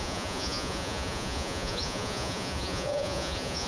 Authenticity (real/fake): fake